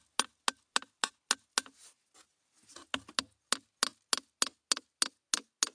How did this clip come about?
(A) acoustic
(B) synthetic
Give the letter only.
A